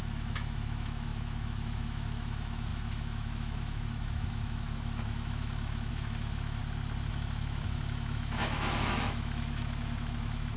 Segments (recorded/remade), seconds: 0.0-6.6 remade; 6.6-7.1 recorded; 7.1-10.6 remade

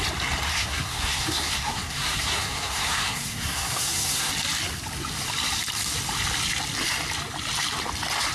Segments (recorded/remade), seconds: 0.0-0.5 recorded; 0.5-4.3 remade; 4.3-8.3 recorded

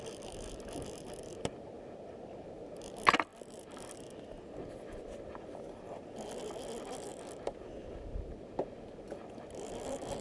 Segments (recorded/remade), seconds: 0.0-10.2 recorded

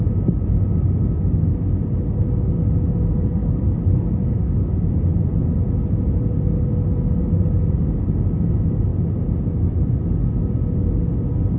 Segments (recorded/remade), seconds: 0.0-3.4 recorded; 3.4-4.9 remade; 4.9-11.6 recorded

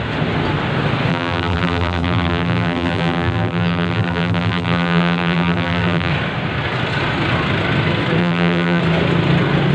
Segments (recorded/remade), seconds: 0.0-1.1 recorded; 1.1-6.1 remade; 6.1-8.2 recorded; 8.2-8.8 remade; 8.8-9.7 recorded

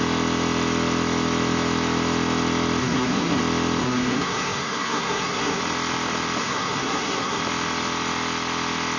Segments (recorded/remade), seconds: 0.0-2.8 recorded; 2.8-3.4 remade; 3.4-3.8 recorded; 3.8-5.6 remade; 5.6-6.4 recorded; 6.4-7.4 remade; 7.4-9.0 recorded